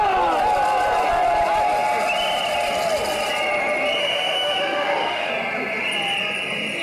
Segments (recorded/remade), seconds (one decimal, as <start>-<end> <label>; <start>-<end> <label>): 0.0-4.0 recorded; 4.0-5.3 remade; 5.3-6.8 recorded